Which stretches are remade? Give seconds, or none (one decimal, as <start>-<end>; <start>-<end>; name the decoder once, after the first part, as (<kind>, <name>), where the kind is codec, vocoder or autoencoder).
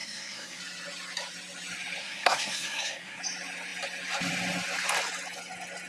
0.0-0.6 (codec, SNAC); 2.0-3.2